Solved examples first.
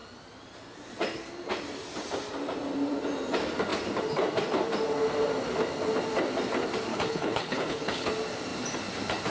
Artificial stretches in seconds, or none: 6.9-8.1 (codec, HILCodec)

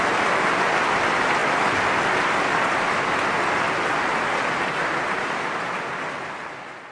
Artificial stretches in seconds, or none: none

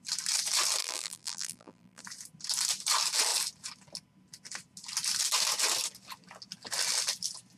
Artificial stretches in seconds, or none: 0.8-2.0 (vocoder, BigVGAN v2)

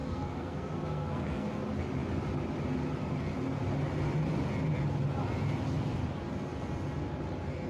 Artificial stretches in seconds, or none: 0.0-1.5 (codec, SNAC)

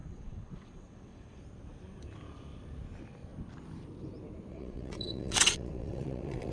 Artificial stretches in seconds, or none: 0.0-1.4 (vocoder, WaveNeXt); 4.5-6.5

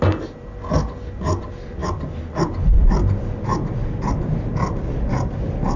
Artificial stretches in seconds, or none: none

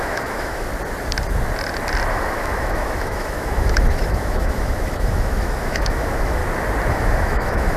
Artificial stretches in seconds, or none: 0.0-0.7 (autoencoder, DAC-VAE); 2.1-6.4; 6.9-7.8

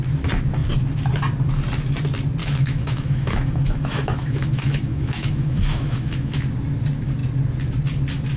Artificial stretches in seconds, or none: 2.4-6.4 (autoencoder, DAC-VAE)